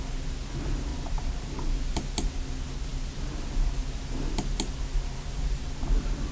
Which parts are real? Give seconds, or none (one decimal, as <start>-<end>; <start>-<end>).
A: 0.0-0.9; 1.5-6.3